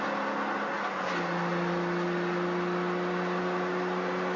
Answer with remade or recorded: recorded